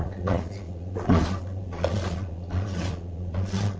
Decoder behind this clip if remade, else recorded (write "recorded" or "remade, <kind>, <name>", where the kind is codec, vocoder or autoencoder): remade, vocoder, Vocos